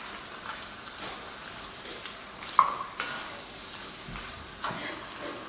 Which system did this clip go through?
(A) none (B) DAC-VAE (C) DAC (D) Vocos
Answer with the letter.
A